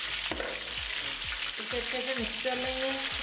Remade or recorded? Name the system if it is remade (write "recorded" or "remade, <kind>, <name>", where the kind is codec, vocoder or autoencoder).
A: recorded